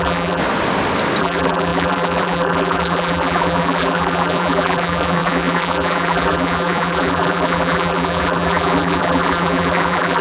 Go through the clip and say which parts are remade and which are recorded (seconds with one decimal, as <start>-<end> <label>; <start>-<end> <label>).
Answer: 0.0-0.4 remade; 0.4-1.2 recorded; 1.2-10.2 remade